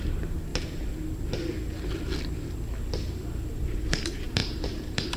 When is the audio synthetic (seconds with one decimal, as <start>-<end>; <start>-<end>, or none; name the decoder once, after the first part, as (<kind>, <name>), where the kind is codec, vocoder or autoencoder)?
0.0-0.5 (vocoder, BigVGAN v2); 3.5-5.2